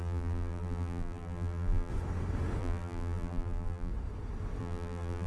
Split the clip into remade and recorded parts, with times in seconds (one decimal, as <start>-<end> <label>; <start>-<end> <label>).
0.0-1.9 remade; 1.9-2.6 recorded; 2.6-3.9 remade; 3.9-4.6 recorded; 4.6-5.3 remade